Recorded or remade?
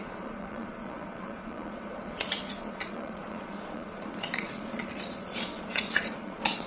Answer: remade